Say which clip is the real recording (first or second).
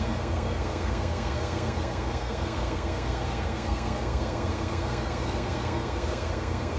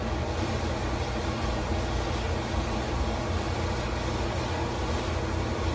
second